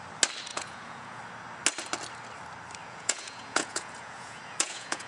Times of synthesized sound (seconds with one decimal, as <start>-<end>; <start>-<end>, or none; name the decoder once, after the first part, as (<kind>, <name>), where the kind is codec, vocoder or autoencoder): 0.5-1.2 (vocoder, Vocos); 2.8-5.1